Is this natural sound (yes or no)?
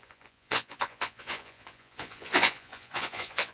no